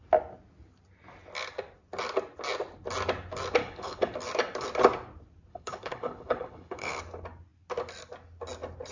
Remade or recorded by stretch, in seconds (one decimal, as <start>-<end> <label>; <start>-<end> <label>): 0.0-3.6 recorded; 3.6-4.1 remade; 4.1-5.5 recorded; 5.5-7.0 remade; 7.0-8.9 recorded